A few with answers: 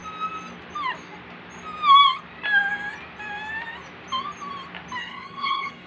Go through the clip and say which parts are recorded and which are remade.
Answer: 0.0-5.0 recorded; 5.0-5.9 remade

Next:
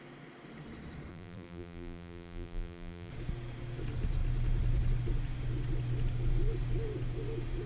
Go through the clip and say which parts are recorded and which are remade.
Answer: 0.0-1.1 recorded; 1.1-3.1 remade; 3.1-7.7 recorded

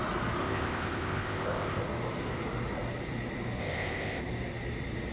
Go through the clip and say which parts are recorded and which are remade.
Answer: 0.0-0.4 recorded; 0.4-1.8 remade; 1.8-3.6 recorded; 3.6-4.2 remade; 4.2-5.1 recorded

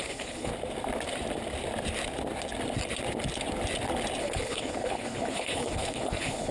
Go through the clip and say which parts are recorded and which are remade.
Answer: 0.0-0.5 remade; 0.5-4.2 recorded; 4.2-6.5 remade

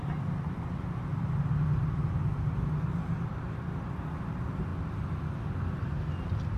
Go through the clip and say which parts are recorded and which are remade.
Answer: 0.0-2.0 remade; 2.0-2.6 recorded; 2.6-6.6 remade